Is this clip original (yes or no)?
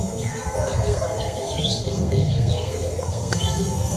no